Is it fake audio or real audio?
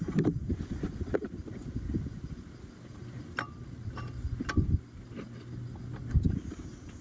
real